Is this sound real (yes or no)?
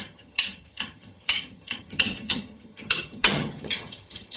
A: no